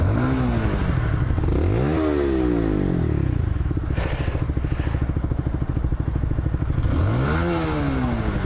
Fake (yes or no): no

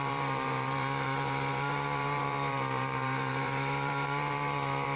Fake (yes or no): yes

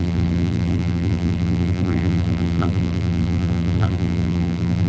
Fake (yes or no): yes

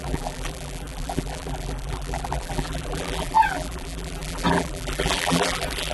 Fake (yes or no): yes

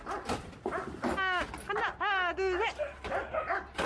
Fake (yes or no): no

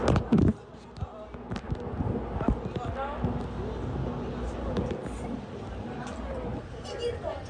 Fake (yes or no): no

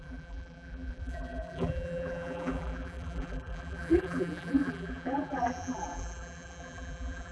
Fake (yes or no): yes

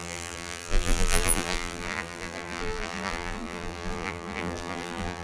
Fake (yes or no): yes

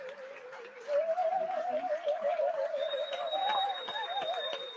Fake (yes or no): yes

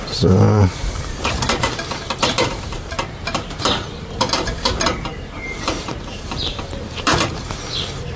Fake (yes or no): yes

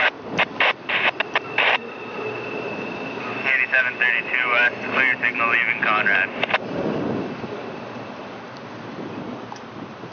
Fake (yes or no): yes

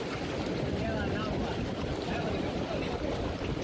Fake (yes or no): no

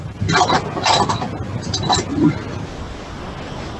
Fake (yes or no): no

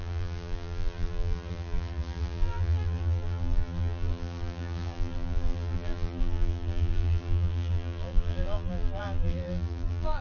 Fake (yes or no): yes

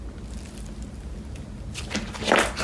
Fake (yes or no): no